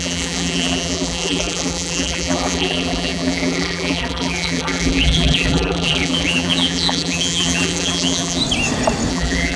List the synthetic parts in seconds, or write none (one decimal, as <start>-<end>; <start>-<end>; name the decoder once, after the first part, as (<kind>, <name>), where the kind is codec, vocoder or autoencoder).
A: 0.0-8.4 (vocoder, BigVGAN v2); 9.1-9.6